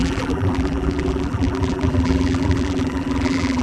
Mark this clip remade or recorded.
remade